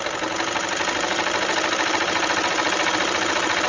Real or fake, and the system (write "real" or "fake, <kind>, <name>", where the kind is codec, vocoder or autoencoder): real